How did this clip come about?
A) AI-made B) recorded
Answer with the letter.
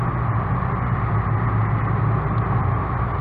B